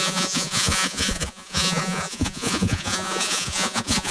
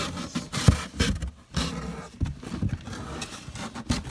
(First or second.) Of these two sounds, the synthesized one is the first